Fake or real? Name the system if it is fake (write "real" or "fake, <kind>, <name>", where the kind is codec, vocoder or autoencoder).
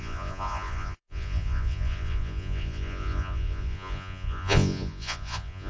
fake, vocoder, Vocos